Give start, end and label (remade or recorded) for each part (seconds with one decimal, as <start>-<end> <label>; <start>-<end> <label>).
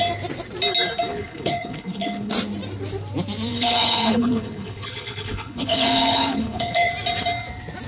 0.0-1.1 recorded; 1.1-2.3 remade; 2.3-3.5 recorded; 3.5-6.9 remade; 6.9-7.9 recorded